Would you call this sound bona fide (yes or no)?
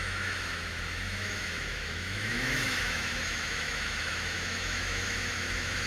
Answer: no